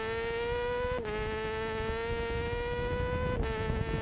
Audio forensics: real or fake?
real